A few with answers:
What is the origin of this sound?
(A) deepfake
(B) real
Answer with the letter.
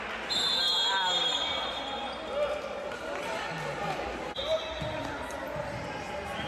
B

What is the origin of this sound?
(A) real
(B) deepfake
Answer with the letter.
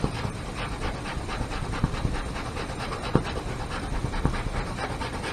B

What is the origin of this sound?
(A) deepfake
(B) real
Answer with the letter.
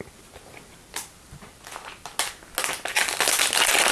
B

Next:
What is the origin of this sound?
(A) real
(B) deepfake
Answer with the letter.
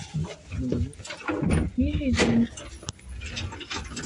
A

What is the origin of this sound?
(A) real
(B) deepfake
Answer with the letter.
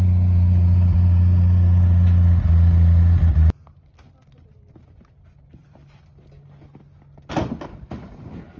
A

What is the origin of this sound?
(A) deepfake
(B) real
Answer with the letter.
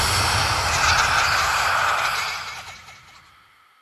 B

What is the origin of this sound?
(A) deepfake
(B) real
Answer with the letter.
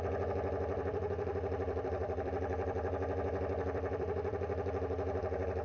A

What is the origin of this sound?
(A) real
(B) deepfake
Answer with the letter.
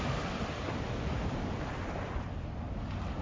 A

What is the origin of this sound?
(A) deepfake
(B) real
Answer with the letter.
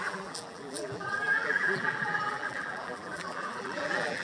A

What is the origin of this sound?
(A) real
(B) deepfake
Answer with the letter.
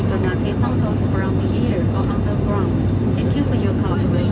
A